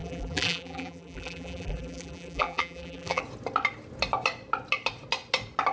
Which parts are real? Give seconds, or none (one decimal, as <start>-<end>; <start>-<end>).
3.2-5.7